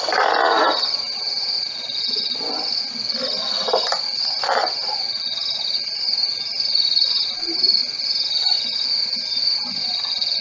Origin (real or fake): real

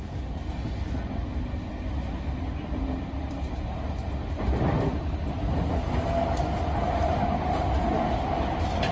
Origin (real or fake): real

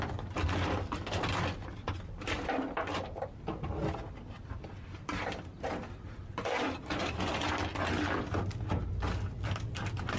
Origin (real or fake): real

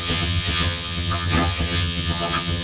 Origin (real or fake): fake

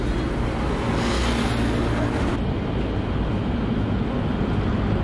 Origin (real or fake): real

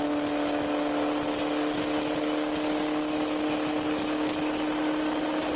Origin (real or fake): real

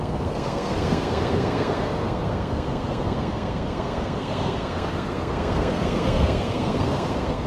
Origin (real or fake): fake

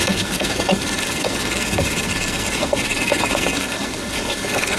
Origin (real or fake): fake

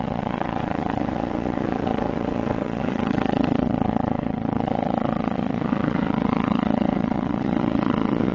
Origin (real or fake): fake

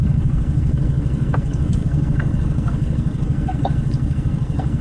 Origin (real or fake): fake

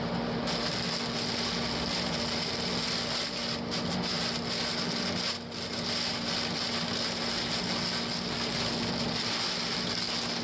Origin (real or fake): real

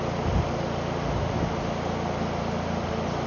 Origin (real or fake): real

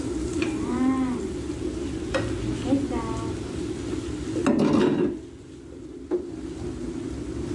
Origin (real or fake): real